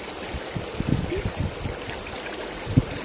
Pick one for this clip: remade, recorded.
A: recorded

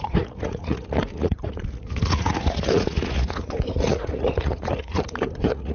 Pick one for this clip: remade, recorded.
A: remade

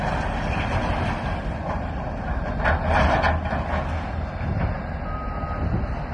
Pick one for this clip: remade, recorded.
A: recorded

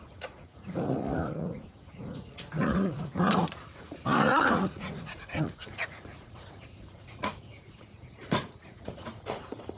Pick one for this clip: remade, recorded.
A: remade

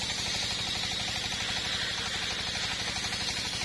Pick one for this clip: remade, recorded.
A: recorded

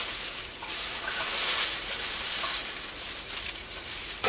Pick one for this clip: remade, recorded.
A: remade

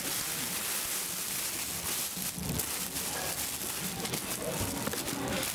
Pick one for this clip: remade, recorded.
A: recorded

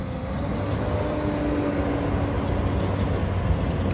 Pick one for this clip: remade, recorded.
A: recorded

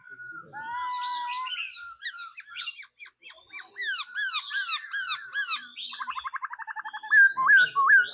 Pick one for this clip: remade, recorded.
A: recorded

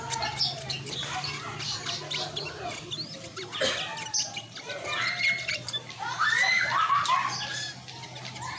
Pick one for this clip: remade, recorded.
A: recorded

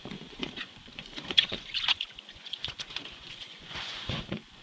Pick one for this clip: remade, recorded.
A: remade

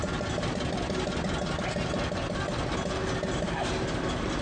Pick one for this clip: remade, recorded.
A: recorded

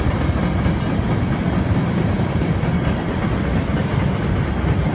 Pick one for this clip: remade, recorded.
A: recorded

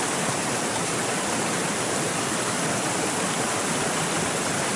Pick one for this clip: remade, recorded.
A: recorded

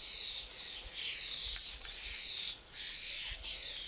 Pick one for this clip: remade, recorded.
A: remade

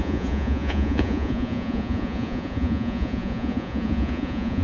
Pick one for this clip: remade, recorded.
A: remade